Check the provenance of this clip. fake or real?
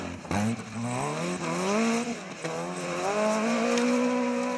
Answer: real